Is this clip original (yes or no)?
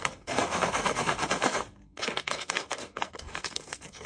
no